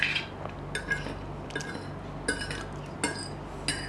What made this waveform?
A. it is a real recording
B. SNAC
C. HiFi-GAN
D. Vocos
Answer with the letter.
A